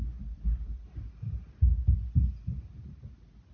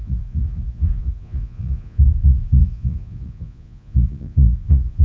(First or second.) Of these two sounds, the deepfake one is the second